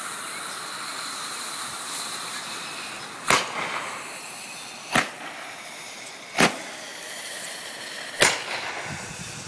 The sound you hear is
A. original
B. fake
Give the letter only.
A